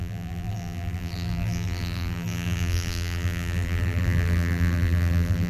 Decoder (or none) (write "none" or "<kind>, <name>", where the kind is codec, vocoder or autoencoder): vocoder, BigVGAN v2